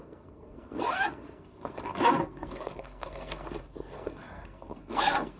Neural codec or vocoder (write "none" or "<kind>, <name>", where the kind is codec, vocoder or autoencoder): codec, SNAC